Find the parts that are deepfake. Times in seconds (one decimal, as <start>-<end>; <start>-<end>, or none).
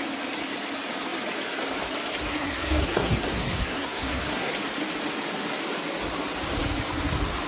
2.3-4.5